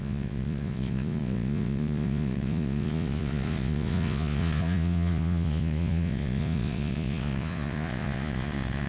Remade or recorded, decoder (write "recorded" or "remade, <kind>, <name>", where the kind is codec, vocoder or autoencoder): remade, vocoder, Vocos